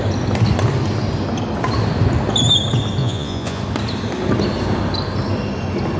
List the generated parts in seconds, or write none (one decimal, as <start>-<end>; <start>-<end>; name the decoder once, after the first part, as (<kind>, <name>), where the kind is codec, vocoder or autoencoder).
3.0-3.6 (vocoder, Vocos)